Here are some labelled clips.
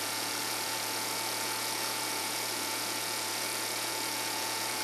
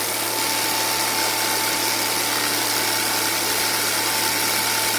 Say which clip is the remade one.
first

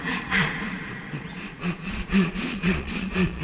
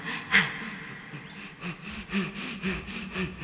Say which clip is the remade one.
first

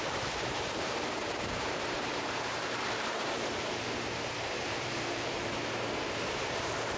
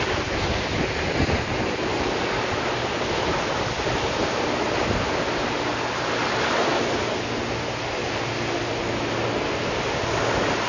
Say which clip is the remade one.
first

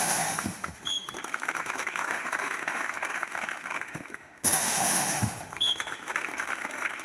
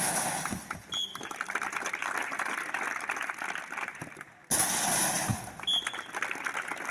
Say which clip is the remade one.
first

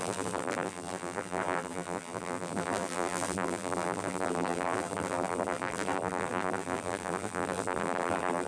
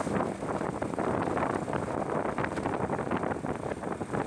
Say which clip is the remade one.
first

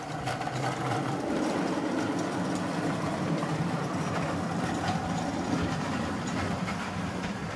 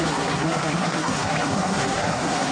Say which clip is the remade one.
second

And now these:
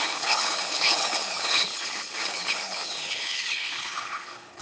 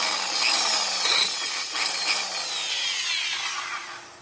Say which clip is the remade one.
first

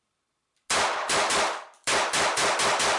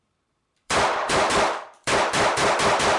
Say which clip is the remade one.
second